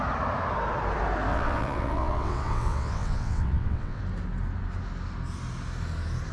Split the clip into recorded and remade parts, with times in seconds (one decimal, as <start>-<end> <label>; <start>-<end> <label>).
0.0-1.3 recorded; 1.3-4.0 remade; 4.0-6.3 recorded